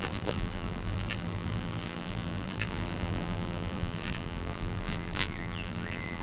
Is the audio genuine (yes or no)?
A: no